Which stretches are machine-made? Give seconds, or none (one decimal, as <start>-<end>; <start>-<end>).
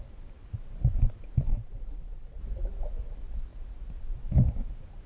1.5-2.4